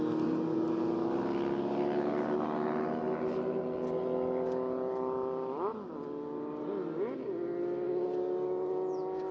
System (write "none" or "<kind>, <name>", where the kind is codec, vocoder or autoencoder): none